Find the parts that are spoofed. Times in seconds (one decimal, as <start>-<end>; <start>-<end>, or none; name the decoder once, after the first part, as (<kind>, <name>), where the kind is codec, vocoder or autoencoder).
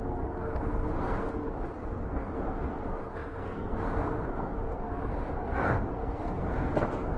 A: 0.0-7.2 (codec, SNAC)